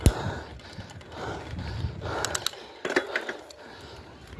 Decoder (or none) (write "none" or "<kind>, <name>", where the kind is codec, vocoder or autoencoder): none